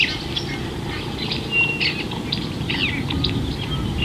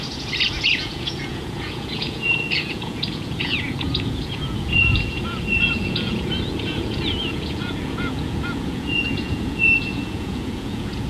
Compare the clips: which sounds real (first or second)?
first